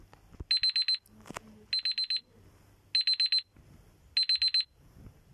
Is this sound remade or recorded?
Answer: recorded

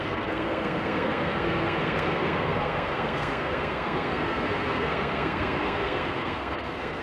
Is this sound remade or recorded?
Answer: remade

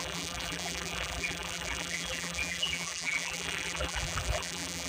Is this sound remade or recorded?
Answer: remade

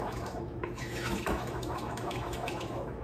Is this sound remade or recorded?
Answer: remade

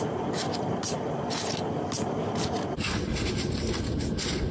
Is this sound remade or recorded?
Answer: recorded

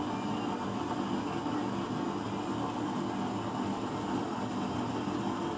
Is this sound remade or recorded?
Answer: recorded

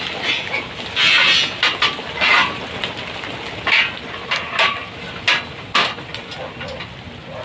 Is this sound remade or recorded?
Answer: recorded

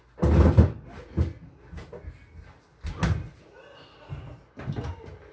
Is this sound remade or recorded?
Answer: recorded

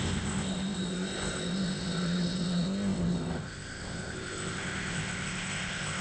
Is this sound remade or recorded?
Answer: remade